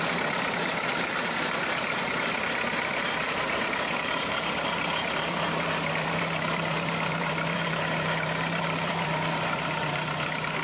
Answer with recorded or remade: remade